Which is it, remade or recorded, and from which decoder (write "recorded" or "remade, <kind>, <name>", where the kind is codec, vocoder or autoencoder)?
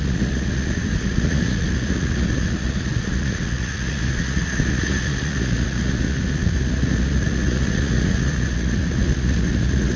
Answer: remade, vocoder, Vocos